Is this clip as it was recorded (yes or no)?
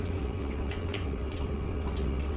no